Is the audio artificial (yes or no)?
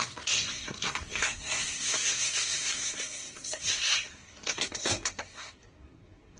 yes